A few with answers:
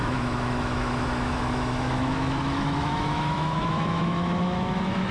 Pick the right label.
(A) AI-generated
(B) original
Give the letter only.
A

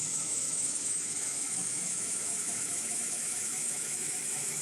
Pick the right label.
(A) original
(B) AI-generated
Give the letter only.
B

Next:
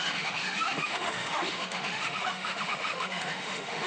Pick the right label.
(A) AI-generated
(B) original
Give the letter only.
A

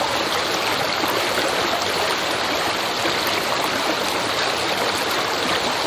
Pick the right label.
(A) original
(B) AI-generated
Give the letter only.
A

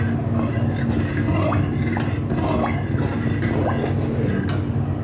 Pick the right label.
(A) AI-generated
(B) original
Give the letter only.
B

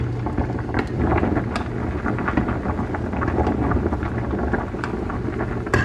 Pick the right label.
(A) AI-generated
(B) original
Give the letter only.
B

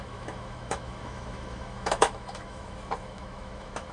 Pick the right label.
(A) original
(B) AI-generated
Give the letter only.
B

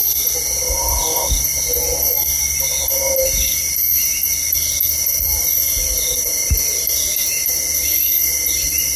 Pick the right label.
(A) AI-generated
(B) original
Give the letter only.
B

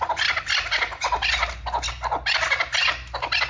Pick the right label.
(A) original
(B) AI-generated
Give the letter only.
A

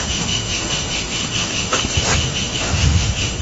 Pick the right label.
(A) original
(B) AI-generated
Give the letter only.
B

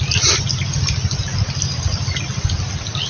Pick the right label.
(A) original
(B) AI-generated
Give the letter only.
A